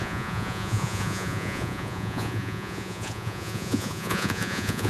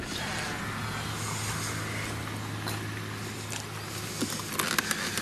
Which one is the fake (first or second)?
first